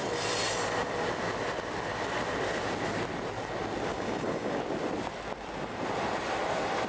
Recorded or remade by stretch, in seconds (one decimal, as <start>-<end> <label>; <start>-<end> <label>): 0.0-3.9 recorded; 3.9-4.6 remade; 4.6-6.9 recorded